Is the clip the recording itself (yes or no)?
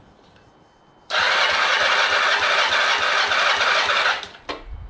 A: yes